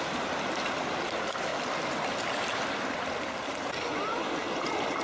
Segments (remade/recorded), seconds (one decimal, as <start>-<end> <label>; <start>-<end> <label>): 0.0-5.0 recorded